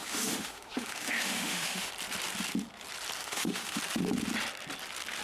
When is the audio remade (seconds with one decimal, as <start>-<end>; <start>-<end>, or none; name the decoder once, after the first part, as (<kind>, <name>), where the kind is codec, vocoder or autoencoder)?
0.0-1.9 (autoencoder, DAC-VAE); 3.2-3.8